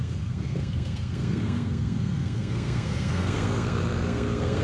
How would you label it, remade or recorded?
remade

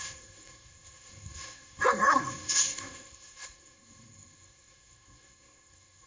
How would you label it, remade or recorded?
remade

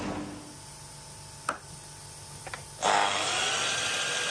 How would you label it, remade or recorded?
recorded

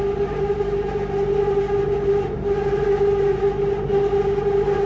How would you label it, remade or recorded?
recorded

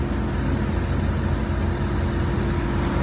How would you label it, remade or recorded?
recorded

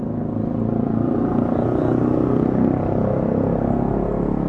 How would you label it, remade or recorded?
recorded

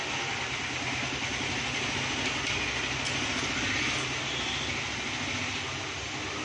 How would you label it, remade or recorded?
recorded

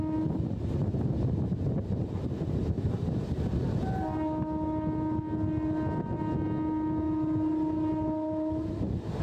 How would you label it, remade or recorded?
recorded